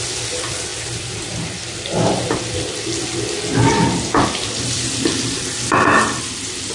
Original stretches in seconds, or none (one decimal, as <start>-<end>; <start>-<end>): 0.0-0.7; 2.1-6.7